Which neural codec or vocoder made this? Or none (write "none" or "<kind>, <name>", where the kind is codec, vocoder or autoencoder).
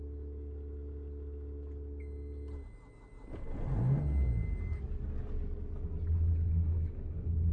none